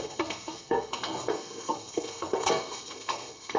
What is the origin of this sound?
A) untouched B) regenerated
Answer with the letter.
B